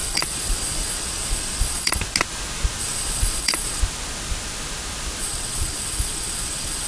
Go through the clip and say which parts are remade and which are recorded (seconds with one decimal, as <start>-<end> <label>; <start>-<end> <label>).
0.0-2.0 remade; 2.0-2.8 recorded; 2.8-3.8 remade; 3.8-5.2 recorded; 5.2-6.9 remade